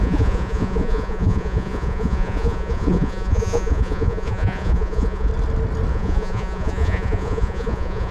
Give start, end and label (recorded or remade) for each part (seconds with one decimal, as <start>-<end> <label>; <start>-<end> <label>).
0.0-5.3 remade; 5.3-5.9 recorded; 5.9-8.1 remade